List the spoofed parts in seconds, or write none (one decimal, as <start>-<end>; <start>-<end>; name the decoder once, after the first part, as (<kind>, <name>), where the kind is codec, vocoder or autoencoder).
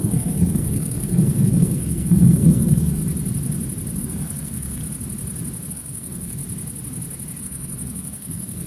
0.0-3.0 (codec, SNAC); 4.0-4.8; 5.7-6.4; 7.4-8.7